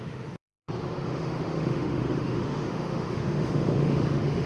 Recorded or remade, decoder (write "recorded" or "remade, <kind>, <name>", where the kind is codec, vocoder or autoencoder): remade, autoencoder, DAC-VAE